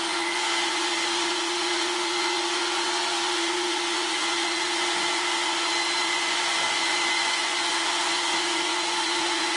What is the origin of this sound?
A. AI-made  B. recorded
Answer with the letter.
A